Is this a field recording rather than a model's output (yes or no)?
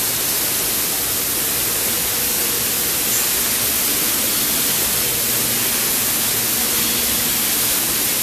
yes